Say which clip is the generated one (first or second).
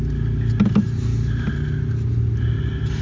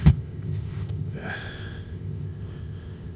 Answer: second